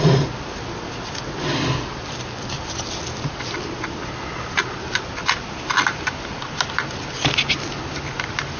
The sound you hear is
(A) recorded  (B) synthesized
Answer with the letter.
A